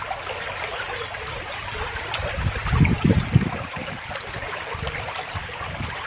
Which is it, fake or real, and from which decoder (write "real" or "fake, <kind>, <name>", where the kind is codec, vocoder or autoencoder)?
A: real